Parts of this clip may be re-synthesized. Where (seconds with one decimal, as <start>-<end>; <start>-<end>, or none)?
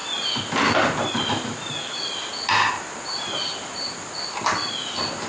none